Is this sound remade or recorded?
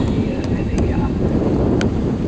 remade